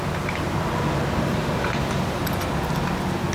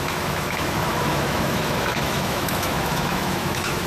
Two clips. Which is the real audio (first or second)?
first